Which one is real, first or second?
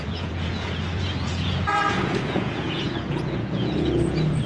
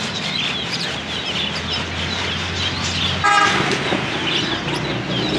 second